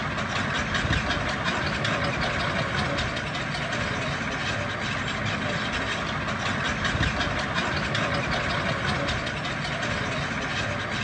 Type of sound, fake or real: real